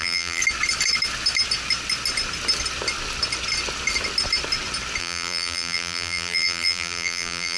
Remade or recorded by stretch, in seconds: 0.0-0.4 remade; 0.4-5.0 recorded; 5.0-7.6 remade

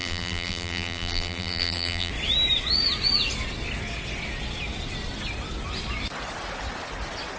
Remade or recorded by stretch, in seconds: 0.0-2.1 remade; 2.1-7.4 recorded

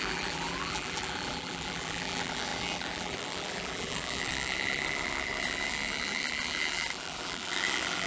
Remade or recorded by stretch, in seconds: 0.0-8.1 remade

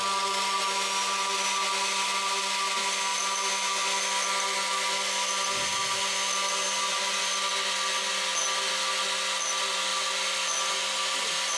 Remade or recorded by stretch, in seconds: 0.0-11.6 recorded

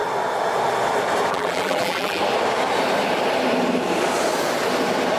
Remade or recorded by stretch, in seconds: 0.0-1.3 recorded; 1.3-2.2 remade; 2.2-5.2 recorded